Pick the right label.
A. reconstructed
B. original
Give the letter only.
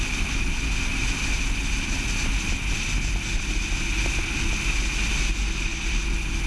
B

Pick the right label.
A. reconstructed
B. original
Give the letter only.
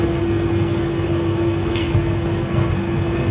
A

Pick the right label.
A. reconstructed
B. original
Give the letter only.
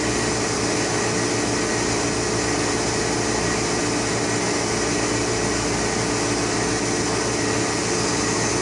B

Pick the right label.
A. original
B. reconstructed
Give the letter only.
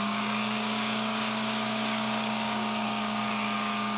B